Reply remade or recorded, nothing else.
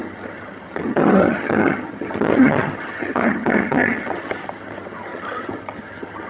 remade